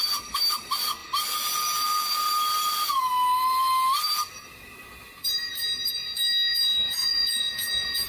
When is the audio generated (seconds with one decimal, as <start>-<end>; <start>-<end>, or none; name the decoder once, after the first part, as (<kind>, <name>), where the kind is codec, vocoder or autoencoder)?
7.0-8.1 (vocoder, Vocos)